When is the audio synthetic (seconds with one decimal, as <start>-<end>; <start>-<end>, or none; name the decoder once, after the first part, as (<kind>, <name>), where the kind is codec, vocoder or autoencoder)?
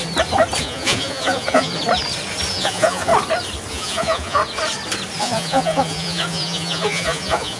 0.6-1.7 (vocoder, Vocos); 2.5-3.1; 3.7-4.4; 5.2-7.6